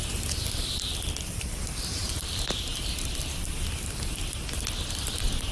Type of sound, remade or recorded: remade